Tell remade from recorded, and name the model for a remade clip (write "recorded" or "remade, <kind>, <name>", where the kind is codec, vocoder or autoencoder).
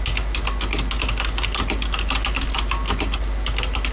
recorded